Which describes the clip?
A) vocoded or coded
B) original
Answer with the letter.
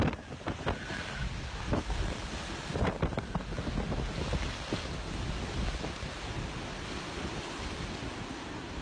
B